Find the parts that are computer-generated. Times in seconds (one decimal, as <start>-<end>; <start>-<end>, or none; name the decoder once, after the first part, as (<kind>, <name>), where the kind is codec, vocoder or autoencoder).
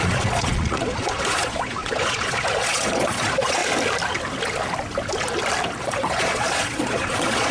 0.0-3.6 (vocoder, Vocos); 5.8-7.5